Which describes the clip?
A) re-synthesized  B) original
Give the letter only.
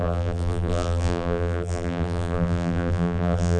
A